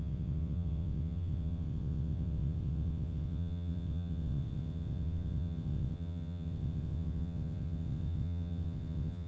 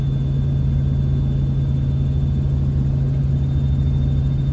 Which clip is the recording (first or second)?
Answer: second